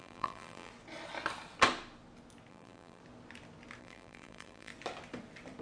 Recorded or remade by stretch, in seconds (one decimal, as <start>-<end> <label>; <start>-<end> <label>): 0.0-0.7 remade; 0.7-2.5 recorded; 2.5-3.0 remade; 3.0-3.8 recorded; 3.8-4.7 remade; 4.7-5.6 recorded